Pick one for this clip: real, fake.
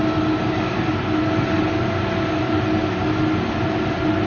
real